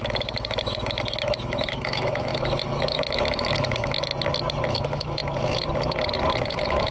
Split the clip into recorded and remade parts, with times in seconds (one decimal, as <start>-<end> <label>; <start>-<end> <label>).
0.0-4.1 remade; 4.1-4.7 recorded; 4.7-5.2 remade; 5.2-6.4 recorded; 6.4-6.9 remade